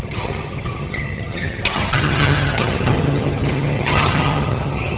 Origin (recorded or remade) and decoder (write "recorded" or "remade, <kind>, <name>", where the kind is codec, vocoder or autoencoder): remade, vocoder, HiFi-GAN